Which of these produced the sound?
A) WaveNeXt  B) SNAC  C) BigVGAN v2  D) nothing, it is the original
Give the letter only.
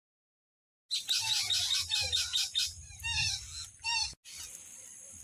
D